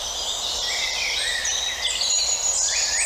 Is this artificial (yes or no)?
no